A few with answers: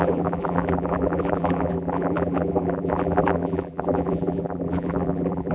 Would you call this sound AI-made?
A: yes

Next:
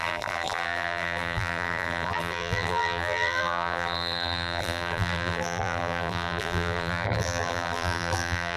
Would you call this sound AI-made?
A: yes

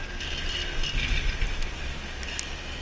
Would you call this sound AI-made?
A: no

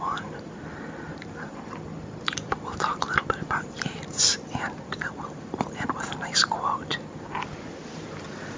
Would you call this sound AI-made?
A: yes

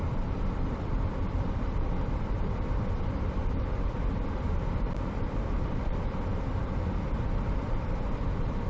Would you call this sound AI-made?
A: yes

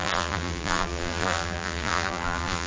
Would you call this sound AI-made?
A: yes